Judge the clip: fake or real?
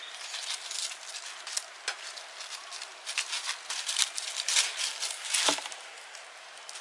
real